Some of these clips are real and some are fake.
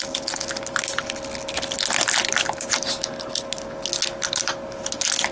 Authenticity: real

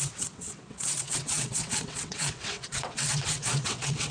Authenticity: fake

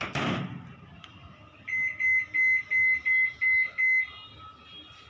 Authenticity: real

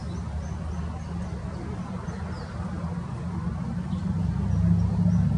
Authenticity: real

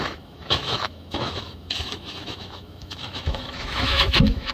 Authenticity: fake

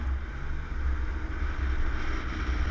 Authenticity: real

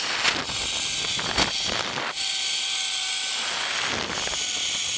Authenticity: real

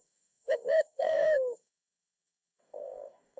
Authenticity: fake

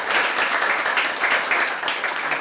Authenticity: real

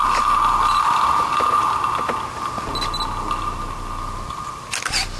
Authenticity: real